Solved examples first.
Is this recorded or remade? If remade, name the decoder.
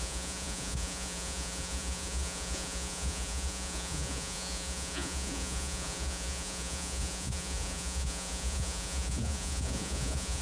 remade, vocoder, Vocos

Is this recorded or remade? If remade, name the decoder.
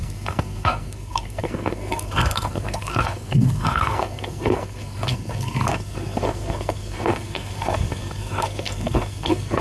remade, codec, SNAC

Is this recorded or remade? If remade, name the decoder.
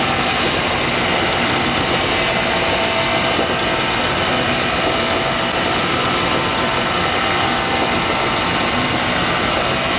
recorded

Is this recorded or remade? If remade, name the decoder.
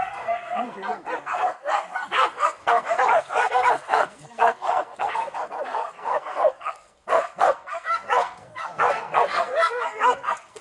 remade, codec, SNAC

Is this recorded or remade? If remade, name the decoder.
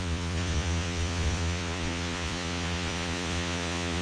remade, vocoder, Vocos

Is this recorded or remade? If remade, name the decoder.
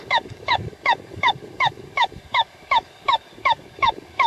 remade, codec, DAC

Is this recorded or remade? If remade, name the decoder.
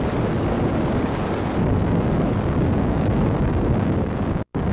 remade, codec, DAC